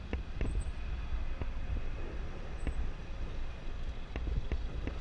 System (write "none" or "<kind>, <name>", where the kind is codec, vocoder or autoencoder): none